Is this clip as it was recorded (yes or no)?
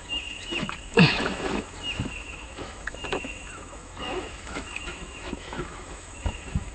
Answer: no